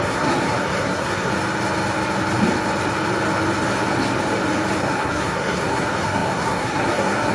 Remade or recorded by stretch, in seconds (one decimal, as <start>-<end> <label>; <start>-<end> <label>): 0.0-1.3 remade; 1.3-4.8 recorded; 4.8-7.3 remade